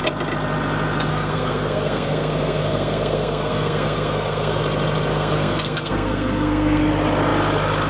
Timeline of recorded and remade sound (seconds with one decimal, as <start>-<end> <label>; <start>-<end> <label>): 0.0-1.1 recorded; 1.1-4.6 remade; 4.6-5.1 recorded; 5.1-6.8 remade; 6.8-7.9 recorded